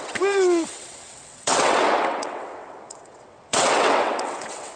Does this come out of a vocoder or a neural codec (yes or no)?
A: yes